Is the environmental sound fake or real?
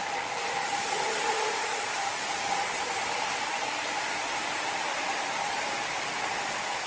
real